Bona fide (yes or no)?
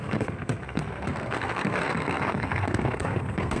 no